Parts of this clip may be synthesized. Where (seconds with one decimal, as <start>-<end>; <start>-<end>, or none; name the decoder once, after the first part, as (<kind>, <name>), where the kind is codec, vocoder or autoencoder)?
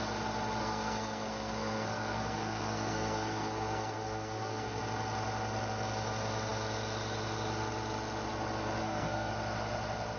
0.6-4.8 (codec, SNAC); 8.8-9.3